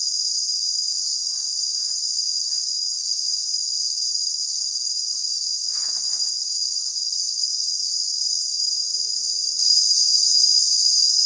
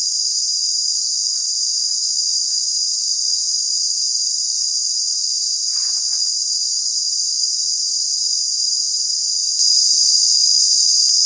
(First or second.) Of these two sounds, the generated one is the first